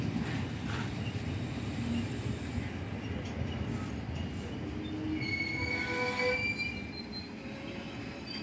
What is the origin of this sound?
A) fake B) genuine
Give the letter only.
B